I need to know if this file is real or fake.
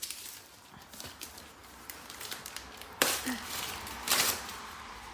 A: fake